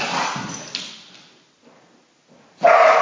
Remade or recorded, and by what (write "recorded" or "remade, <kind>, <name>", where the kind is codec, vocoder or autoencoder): recorded